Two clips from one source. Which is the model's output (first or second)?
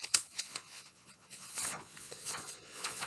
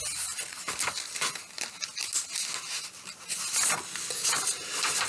first